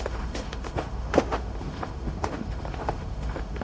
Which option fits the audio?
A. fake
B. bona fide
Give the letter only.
A